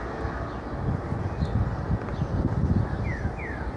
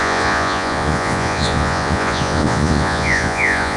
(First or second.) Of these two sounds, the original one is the first